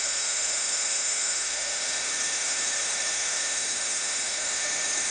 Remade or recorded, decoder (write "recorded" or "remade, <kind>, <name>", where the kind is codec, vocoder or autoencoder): remade, autoencoder, DAC-VAE